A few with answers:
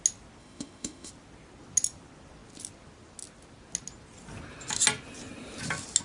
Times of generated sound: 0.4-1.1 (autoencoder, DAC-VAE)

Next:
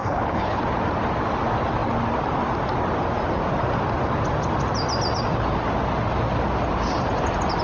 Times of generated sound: 0.0-0.6 (codec, HILCodec)

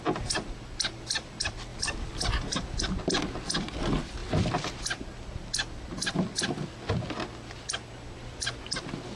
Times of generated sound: none

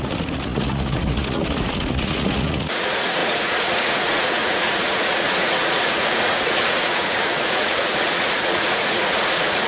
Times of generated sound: 0.0-9.7 (vocoder, Vocos)

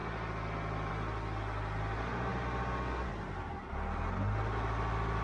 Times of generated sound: none